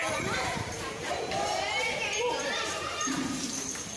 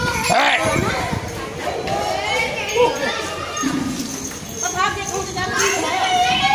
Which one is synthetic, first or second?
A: first